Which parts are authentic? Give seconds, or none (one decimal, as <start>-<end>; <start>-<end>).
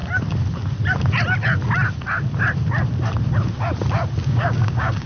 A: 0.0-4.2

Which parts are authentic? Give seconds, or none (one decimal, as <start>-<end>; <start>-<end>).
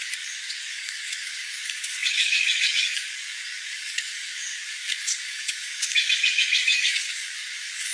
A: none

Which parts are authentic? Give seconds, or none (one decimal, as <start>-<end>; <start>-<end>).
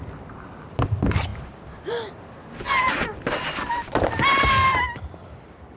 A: 0.0-5.8